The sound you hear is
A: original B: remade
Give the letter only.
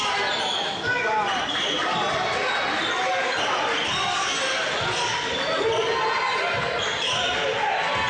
A